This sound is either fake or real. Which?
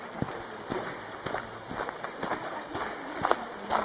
real